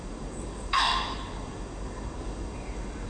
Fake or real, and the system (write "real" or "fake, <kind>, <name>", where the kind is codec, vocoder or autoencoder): fake, codec, DAC